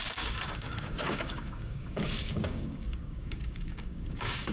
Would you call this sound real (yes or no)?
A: no